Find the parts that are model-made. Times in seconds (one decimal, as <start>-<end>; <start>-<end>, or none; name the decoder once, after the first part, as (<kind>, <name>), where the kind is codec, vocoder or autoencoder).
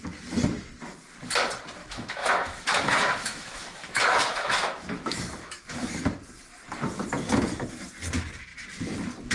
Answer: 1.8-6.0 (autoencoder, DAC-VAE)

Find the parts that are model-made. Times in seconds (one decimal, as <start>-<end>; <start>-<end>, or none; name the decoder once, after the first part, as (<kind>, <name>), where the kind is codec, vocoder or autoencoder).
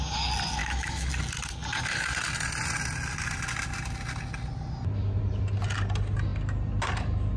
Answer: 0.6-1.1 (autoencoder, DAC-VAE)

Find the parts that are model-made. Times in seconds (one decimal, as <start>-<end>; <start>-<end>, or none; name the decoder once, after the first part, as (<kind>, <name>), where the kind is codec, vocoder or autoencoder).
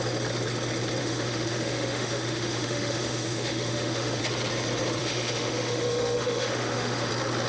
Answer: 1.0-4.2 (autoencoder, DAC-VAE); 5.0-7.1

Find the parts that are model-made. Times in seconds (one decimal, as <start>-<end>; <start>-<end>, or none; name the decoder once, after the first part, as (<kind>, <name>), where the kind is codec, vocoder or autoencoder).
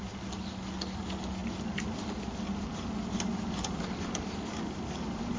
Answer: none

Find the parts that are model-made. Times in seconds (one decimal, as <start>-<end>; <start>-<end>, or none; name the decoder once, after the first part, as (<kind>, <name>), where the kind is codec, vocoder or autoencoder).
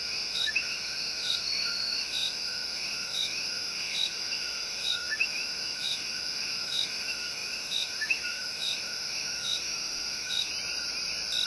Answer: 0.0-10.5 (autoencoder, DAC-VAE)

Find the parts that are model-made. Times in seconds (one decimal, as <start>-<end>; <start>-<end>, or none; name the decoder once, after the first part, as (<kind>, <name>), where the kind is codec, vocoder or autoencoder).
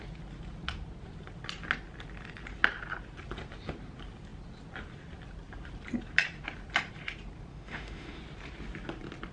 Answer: 7.5-8.2 (autoencoder, DAC-VAE)